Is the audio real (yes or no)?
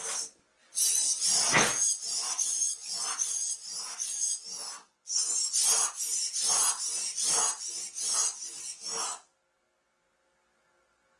yes